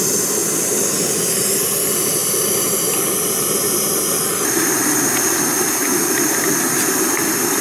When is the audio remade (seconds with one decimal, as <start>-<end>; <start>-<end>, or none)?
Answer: none